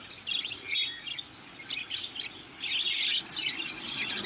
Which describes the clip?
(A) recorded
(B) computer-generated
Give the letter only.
A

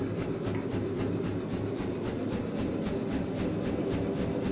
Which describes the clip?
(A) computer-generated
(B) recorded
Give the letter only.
B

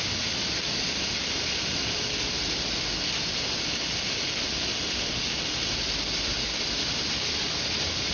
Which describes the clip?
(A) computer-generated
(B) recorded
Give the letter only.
B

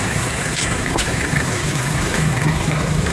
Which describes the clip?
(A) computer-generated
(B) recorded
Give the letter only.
A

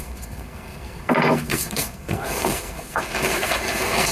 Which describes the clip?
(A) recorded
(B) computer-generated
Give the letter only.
B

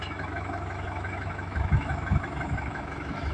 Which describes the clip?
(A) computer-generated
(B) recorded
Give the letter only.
A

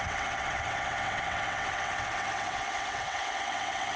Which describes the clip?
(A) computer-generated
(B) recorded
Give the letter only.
A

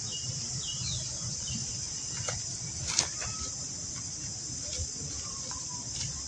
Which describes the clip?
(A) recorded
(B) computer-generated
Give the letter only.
A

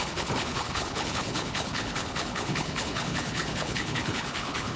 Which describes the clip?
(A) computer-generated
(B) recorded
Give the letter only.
A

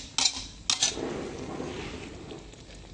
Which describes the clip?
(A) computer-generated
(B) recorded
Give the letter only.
B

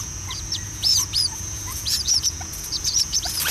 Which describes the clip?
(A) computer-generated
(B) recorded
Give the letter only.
A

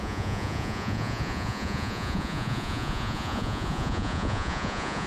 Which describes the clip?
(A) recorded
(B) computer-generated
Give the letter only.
B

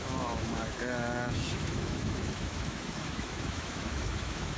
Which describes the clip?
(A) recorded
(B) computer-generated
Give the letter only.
B